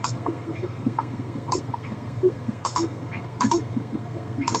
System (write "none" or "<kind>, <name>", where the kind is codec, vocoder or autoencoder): codec, SNAC